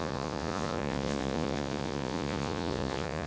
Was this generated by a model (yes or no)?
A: yes